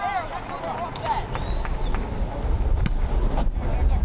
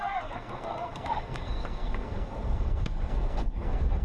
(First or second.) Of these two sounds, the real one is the first